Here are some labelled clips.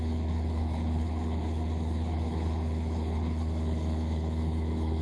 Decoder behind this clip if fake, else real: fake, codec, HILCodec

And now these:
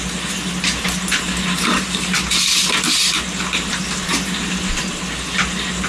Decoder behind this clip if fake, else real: real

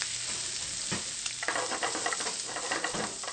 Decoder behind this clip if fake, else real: real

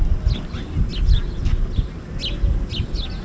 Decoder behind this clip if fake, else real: real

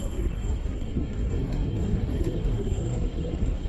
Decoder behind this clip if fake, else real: fake, codec, SNAC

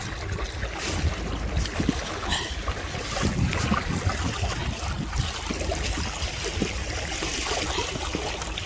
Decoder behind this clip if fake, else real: real